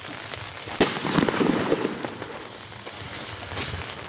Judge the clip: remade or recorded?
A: recorded